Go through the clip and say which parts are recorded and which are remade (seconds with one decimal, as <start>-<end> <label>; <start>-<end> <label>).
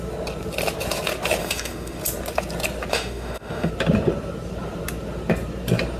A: 0.0-1.4 recorded; 1.4-2.0 remade; 2.0-2.9 recorded; 2.9-3.7 remade; 3.7-6.0 recorded